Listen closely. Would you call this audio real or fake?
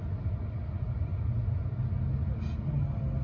real